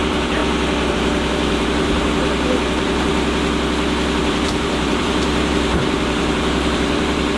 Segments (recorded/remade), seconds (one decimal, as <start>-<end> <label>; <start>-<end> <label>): 0.0-0.4 remade; 0.4-0.9 recorded; 0.9-3.1 remade; 3.1-4.2 recorded; 4.2-7.4 remade